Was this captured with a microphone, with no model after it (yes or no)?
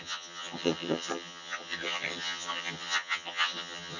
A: no